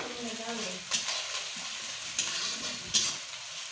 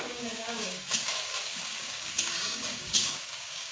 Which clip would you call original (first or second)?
first